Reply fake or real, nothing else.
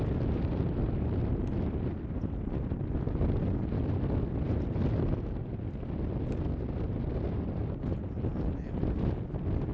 real